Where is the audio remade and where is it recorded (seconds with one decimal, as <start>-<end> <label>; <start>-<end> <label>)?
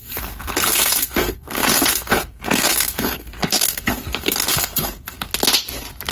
0.0-5.3 remade; 5.3-6.1 recorded